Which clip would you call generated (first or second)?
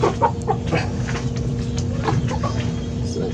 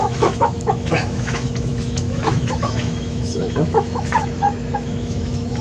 second